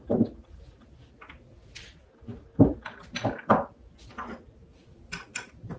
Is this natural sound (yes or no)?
yes